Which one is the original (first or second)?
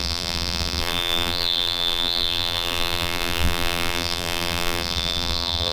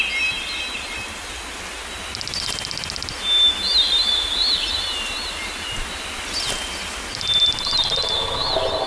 second